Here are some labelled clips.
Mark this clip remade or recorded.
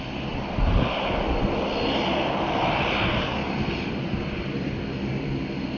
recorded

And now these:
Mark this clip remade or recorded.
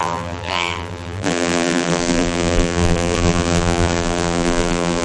remade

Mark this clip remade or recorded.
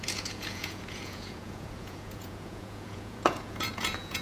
remade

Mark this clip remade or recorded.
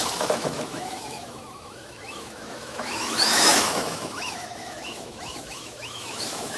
remade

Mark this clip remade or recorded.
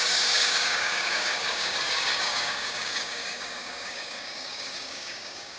remade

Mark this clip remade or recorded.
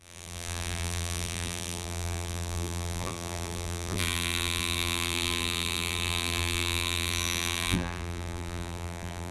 remade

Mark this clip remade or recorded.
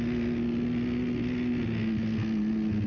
recorded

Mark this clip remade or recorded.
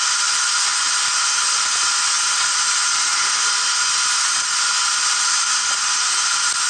recorded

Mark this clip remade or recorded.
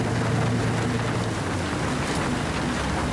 recorded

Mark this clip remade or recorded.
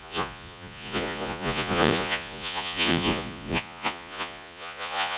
remade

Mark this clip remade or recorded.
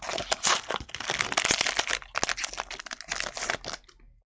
recorded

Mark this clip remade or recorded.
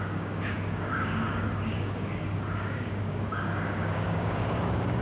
remade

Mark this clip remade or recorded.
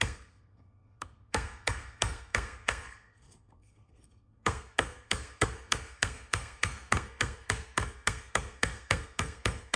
remade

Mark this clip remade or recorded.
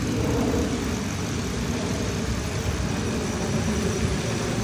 recorded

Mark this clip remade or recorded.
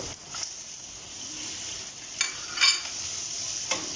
recorded